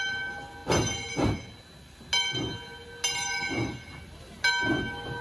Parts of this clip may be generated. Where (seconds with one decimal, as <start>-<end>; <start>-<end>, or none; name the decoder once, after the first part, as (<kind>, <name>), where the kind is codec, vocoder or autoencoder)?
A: none